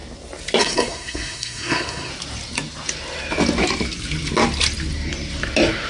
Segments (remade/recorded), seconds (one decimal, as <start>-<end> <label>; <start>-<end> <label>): 0.0-0.6 recorded; 0.6-2.1 remade; 2.1-5.9 recorded